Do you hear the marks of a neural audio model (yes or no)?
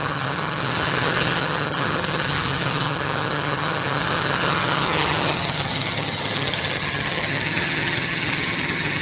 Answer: yes